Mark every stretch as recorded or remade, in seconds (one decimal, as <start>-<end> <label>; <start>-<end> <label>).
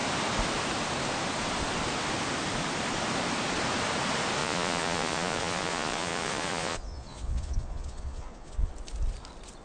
0.0-4.4 recorded; 4.4-8.7 remade; 8.7-9.6 recorded